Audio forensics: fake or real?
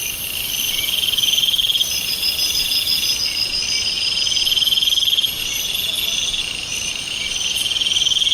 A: real